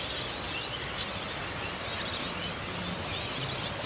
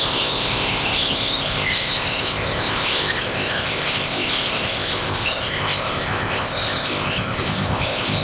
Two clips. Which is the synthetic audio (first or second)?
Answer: second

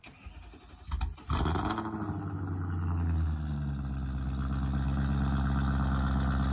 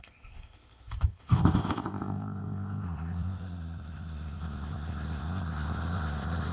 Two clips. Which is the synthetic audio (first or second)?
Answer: second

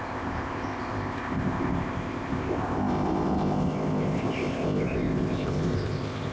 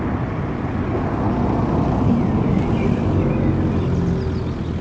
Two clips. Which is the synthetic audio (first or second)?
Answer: first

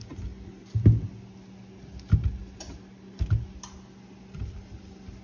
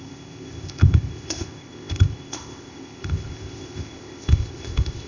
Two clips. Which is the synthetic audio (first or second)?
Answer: second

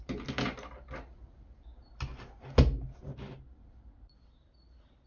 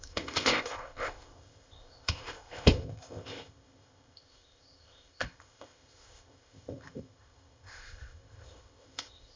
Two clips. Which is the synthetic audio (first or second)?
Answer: second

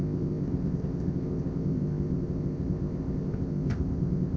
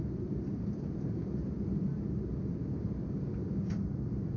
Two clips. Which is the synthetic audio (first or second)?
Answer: first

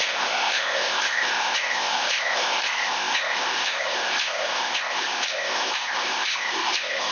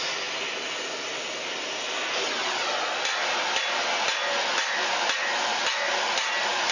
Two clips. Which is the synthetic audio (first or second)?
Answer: first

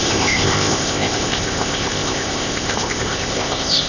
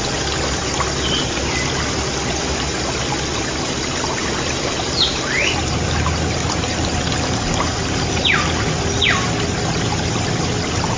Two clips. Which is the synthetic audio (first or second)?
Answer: first